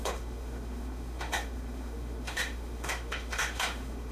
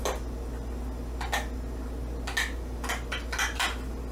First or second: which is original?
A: second